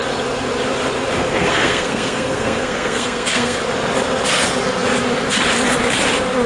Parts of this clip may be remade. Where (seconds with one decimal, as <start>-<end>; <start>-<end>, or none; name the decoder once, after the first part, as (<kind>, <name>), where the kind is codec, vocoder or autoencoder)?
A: 1.2-3.6 (codec, SNAC)